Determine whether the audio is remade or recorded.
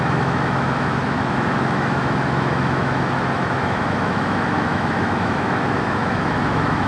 remade